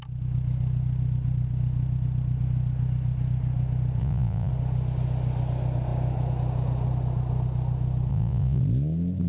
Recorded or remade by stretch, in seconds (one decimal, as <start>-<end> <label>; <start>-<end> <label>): 0.0-4.0 recorded; 4.0-4.5 remade; 4.5-8.1 recorded; 8.1-8.6 remade; 8.6-9.3 recorded